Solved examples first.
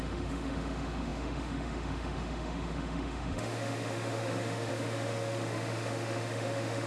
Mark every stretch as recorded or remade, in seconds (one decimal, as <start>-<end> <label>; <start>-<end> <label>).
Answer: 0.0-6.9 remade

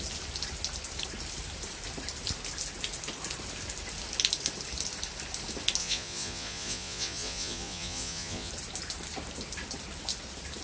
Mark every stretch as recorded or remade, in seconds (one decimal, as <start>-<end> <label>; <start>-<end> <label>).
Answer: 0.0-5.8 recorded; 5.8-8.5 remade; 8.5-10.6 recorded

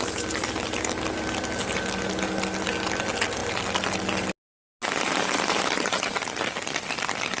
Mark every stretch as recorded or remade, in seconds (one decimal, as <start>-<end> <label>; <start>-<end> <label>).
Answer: 0.0-7.4 recorded

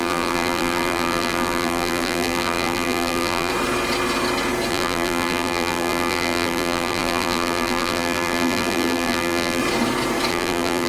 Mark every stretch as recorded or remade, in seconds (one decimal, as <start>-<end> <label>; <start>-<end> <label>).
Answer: 0.0-3.5 remade; 3.5-4.7 recorded; 4.7-9.6 remade; 9.6-10.3 recorded; 10.3-10.9 remade

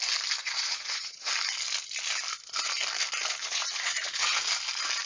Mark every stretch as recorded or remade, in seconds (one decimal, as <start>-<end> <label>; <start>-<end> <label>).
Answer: 0.0-0.4 recorded; 0.4-1.3 remade; 1.3-3.4 recorded; 3.4-4.2 remade; 4.2-5.1 recorded

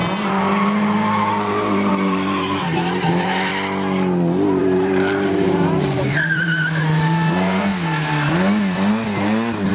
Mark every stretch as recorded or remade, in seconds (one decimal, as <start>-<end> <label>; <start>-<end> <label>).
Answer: 0.0-3.5 remade; 3.5-4.6 recorded; 4.6-7.7 remade; 7.7-9.7 recorded